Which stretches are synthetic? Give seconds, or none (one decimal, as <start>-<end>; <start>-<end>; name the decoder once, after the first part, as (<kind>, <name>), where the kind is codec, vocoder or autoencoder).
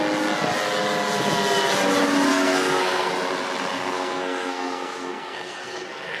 2.3-3.1 (codec, SNAC); 3.7-6.2